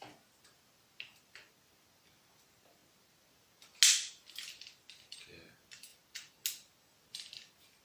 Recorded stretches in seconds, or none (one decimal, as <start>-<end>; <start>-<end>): 0.0-7.8